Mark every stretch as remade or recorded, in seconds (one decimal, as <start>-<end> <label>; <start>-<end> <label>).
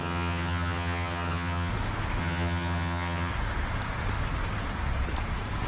0.0-1.7 remade; 1.7-2.2 recorded; 2.2-3.3 remade; 3.3-5.7 recorded